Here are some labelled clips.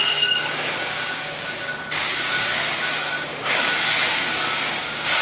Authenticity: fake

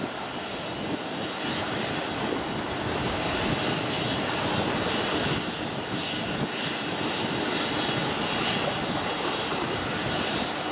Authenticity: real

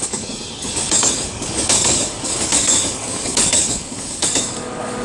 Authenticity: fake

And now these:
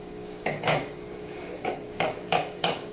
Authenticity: fake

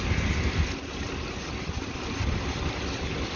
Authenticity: real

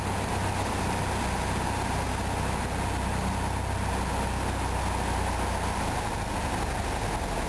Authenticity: real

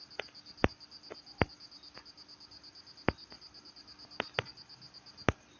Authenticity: real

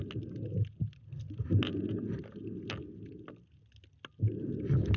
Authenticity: real